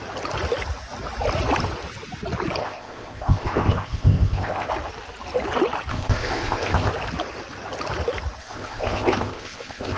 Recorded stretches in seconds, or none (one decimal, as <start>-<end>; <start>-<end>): 0.0-2.6; 4.7-5.9; 6.9-8.4